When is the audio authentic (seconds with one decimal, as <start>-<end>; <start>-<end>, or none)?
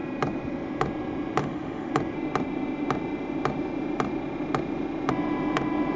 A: 0.0-1.4; 1.9-6.0